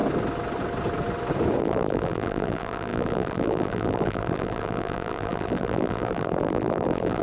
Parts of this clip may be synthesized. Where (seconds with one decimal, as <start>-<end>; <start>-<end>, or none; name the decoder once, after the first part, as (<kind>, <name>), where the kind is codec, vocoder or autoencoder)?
1.6-7.2 (vocoder, BigVGAN v2)